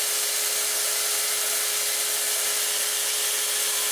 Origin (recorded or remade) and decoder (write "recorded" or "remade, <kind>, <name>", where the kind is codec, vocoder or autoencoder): recorded